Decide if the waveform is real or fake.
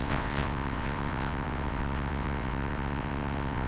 fake